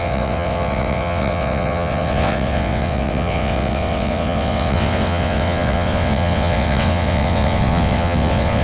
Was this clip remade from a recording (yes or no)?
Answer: yes